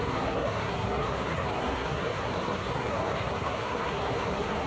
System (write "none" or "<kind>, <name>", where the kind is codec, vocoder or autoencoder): codec, SNAC